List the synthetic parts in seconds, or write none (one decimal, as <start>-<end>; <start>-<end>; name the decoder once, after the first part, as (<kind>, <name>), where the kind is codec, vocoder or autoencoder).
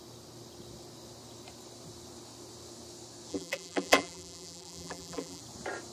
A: 3.3-5.4 (vocoder, BigVGAN v2)